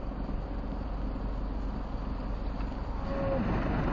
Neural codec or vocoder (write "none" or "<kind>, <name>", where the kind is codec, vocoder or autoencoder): none